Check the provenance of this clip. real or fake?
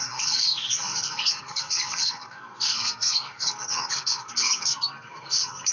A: fake